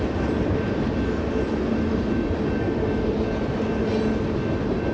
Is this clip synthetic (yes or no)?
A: no